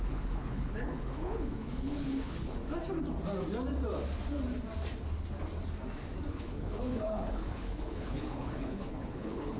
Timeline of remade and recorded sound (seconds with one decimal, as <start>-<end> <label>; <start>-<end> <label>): 0.0-2.6 remade; 2.6-6.3 recorded; 6.3-9.6 remade